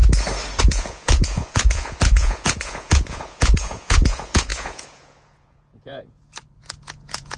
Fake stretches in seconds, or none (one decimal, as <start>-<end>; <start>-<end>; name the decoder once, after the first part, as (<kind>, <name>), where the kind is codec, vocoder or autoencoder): 0.6-7.4 (vocoder, Vocos)